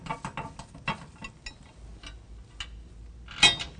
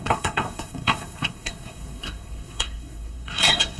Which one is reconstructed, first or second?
second